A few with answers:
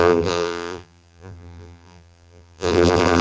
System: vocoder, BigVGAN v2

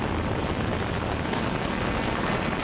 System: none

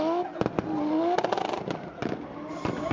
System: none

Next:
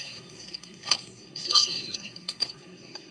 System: codec, SNAC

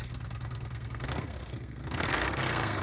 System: codec, SNAC